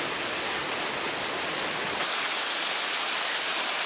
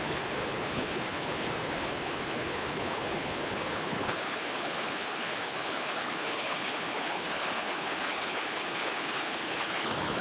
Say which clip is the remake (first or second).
second